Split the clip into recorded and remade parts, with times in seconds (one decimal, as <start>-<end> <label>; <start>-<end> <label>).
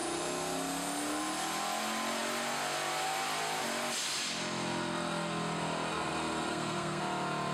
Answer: 0.0-6.5 recorded; 6.5-7.0 remade; 7.0-7.5 recorded